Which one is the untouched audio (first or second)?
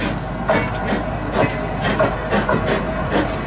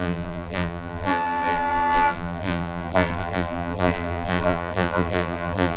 first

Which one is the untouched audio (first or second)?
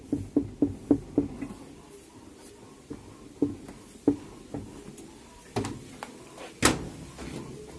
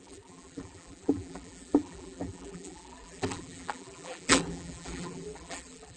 first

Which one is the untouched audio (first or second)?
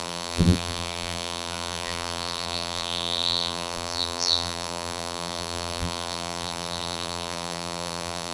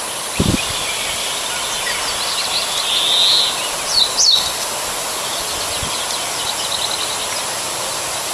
second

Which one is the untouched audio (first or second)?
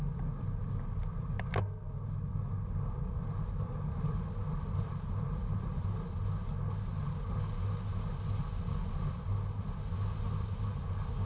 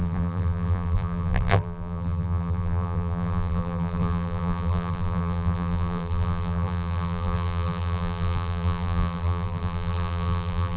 first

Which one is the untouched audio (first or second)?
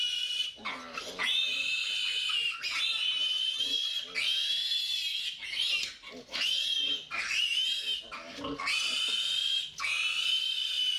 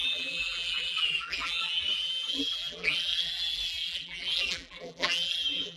first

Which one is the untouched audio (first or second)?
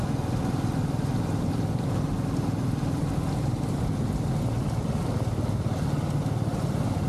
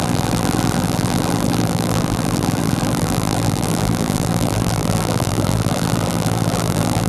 first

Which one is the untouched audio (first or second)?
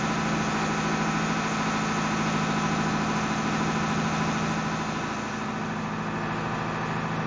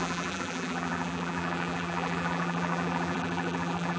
first